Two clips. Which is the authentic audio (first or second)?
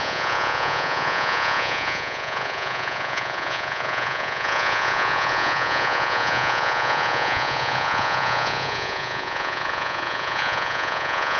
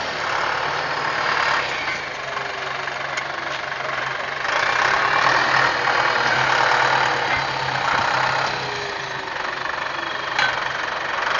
second